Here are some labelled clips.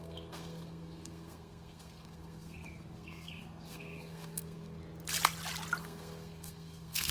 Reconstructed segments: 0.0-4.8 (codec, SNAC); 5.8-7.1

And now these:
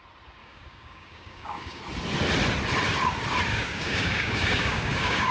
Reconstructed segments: 0.4-1.8 (codec, DAC); 3.5-5.3

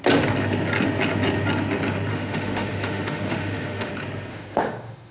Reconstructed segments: 2.1-3.9 (autoencoder, DAC-VAE); 4.3-5.1

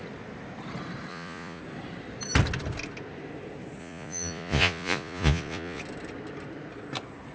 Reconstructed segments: 1.1-1.6 (vocoder, Vocos); 3.8-5.8

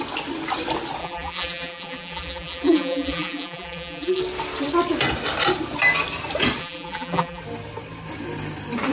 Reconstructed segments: 1.0-4.2 (vocoder, BigVGAN v2); 6.6-7.4

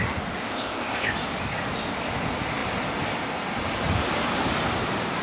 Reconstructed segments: 0.4-1.1 (codec, ZipCodec)

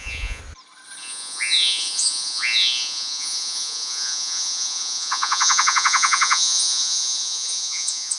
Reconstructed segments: 0.0-0.4 (vocoder, Vocos); 1.0-8.2